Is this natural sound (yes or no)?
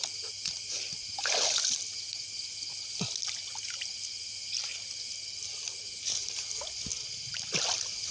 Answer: yes